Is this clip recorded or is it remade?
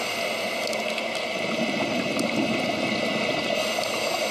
recorded